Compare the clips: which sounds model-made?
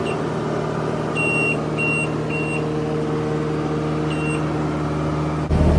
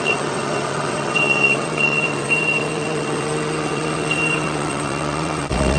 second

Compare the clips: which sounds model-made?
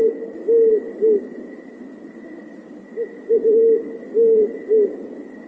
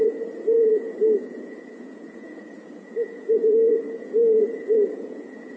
second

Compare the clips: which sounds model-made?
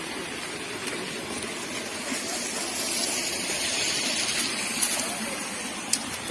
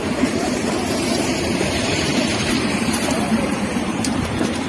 second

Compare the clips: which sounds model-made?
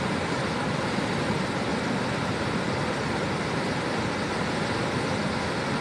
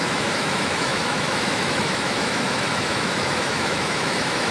second